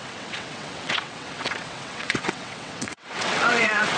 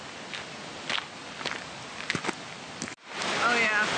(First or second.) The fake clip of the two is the first